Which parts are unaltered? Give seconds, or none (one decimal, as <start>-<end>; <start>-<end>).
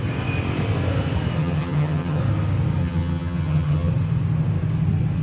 0.0-1.4; 2.2-2.8; 3.9-5.2